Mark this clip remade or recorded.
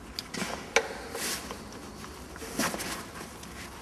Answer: recorded